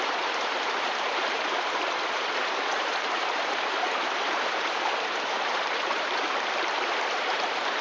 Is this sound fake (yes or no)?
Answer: yes